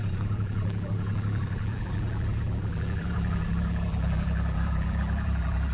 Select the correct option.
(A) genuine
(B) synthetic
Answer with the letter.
B